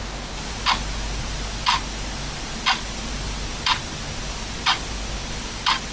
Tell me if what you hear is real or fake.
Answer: real